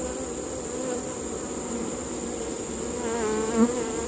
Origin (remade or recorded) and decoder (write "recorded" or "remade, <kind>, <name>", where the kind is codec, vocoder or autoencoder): recorded